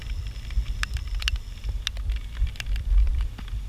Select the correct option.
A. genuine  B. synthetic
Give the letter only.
A